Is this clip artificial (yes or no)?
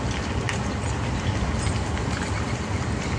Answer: no